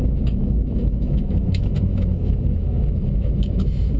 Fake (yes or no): yes